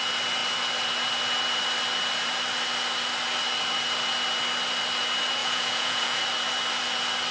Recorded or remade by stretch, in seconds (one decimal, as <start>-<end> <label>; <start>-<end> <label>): 0.0-5.4 recorded; 5.4-6.2 remade; 6.2-7.3 recorded